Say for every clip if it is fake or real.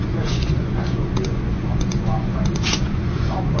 fake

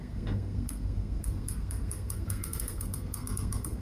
fake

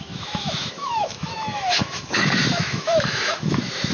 fake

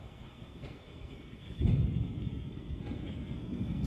fake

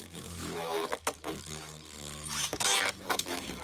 fake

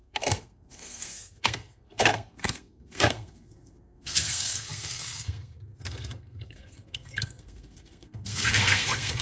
fake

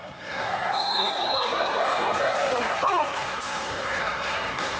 fake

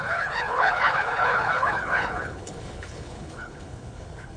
fake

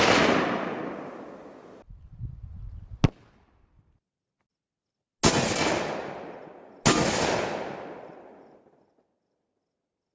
real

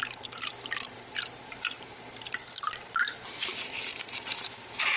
fake